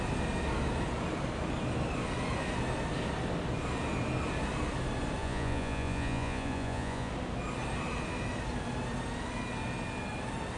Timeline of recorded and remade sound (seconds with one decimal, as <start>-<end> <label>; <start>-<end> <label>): 0.0-5.2 recorded; 5.2-7.1 remade; 7.1-10.6 recorded